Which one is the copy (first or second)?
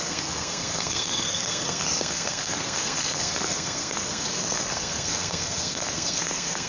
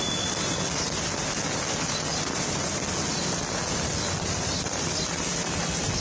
first